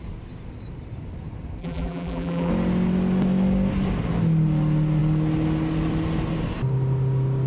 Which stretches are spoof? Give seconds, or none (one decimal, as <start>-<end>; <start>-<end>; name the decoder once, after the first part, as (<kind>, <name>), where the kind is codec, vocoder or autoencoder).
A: 1.6-2.5 (vocoder, BigVGAN v2)